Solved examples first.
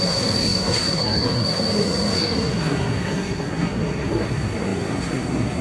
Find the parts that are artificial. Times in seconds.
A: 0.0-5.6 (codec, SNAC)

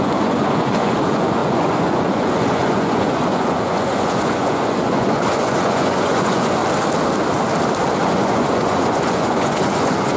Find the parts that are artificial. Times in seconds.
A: 0.0-6.6 (vocoder, Vocos); 8.0-10.2

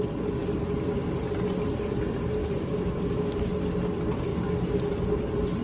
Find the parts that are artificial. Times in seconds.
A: 2.4-3.5 (codec, DAC); 4.3-4.8